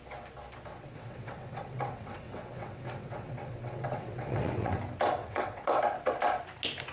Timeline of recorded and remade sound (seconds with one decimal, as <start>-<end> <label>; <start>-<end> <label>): 0.0-0.7 recorded; 0.7-4.8 remade; 4.8-5.2 recorded; 5.2-5.8 remade; 5.8-6.9 recorded